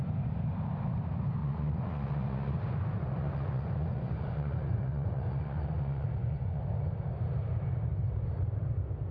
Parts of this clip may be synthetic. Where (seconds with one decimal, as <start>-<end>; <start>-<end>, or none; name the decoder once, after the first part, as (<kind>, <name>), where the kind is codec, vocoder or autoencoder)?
1.4-6.6 (vocoder, Vocos)